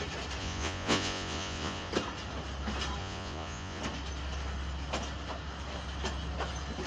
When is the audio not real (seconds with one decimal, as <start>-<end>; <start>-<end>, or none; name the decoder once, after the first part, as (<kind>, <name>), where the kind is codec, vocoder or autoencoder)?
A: 0.4-1.9 (vocoder, Vocos); 3.0-3.8